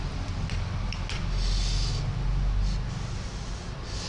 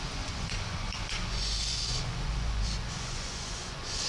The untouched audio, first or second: first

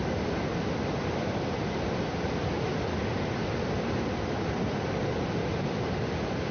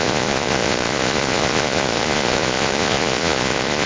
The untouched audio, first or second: first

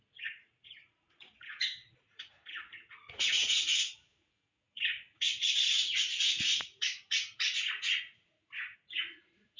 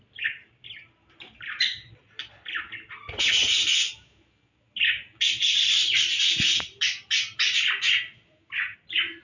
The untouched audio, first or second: second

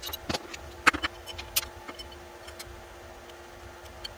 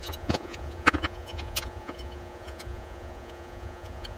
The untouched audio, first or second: first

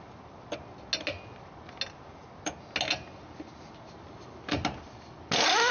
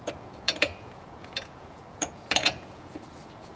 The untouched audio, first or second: first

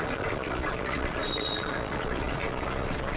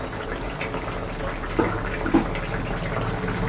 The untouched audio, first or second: second